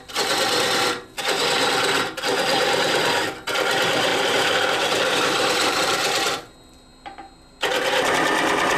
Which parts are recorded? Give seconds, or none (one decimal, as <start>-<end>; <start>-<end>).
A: 0.0-2.5; 3.0-4.1; 6.5-8.8